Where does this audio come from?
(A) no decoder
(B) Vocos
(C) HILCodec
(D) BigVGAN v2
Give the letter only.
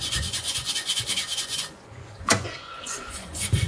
B